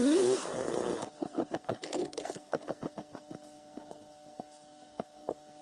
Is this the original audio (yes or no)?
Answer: no